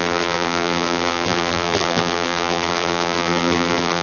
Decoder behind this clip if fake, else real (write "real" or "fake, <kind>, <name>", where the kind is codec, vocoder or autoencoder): fake, vocoder, BigVGAN v2